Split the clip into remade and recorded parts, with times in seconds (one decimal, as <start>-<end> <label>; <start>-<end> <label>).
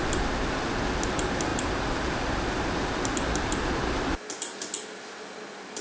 0.0-5.8 recorded